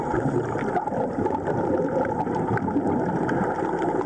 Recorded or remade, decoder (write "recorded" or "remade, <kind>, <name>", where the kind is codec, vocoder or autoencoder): recorded